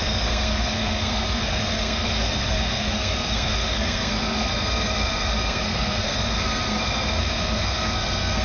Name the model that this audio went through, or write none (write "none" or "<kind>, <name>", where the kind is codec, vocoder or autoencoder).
codec, SNAC